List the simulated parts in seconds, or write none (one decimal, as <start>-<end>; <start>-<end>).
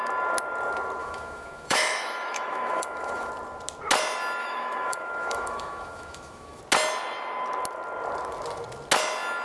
1.0-3.3; 4.4-6.6